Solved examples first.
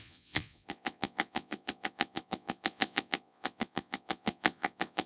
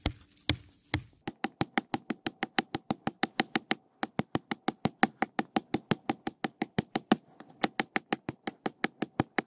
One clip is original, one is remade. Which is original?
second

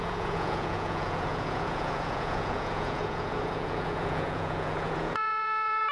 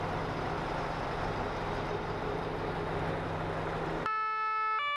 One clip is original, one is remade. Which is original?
second